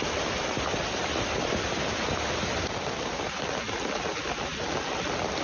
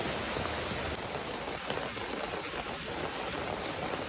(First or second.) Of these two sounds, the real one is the second